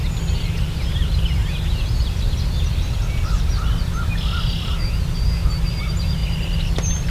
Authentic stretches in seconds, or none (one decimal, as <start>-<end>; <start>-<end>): 0.0-0.6; 1.4-5.7; 6.2-7.1